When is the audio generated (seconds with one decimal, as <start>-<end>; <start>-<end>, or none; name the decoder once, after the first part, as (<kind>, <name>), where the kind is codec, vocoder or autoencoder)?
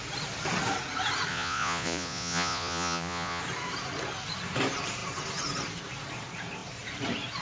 1.3-3.4 (vocoder, Vocos)